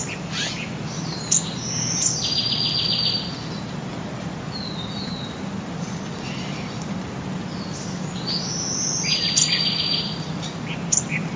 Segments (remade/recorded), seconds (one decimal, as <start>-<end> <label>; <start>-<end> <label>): 0.0-11.4 recorded